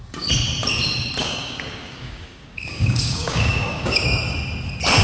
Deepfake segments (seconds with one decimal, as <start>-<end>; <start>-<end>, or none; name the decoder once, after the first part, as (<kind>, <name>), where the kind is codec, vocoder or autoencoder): 1.2-4.2 (codec, DAC)